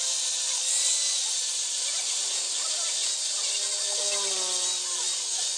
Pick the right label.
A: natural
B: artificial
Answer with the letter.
A